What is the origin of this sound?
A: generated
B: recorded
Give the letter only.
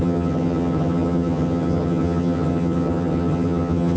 A